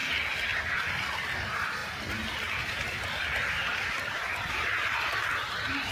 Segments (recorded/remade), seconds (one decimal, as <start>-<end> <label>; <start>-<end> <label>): 0.0-0.6 recorded; 0.6-5.9 remade